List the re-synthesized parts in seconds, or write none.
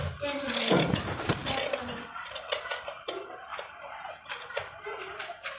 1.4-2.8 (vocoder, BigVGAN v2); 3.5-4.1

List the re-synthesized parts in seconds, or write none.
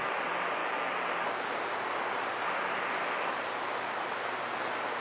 none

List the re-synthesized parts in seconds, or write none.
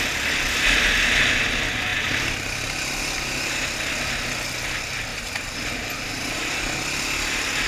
1.9-2.4 (vocoder, BigVGAN v2); 5.1-6.6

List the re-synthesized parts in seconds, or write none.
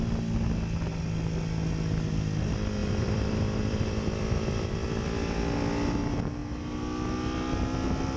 2.8-4.7 (vocoder, BigVGAN v2)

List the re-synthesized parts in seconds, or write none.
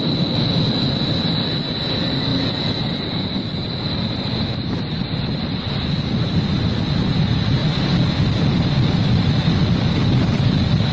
none